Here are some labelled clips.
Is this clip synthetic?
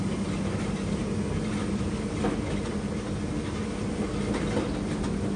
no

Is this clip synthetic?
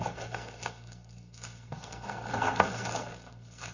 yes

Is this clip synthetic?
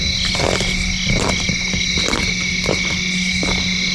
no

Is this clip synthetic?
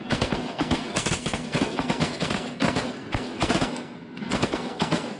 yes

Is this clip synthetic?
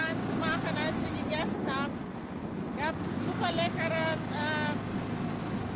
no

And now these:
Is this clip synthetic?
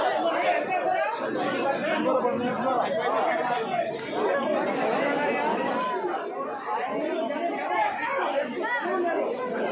no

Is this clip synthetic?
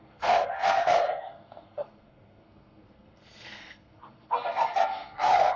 yes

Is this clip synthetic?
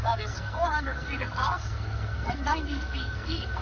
yes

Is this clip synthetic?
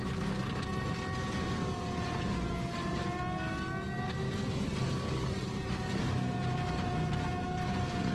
no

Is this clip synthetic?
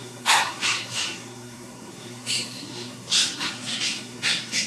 yes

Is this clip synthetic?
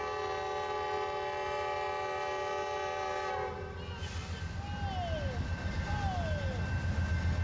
no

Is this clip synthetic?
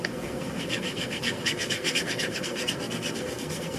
yes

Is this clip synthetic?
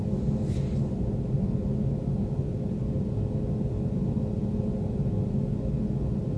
no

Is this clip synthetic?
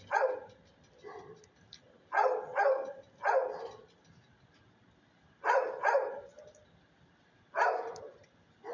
no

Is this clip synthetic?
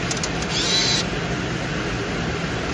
no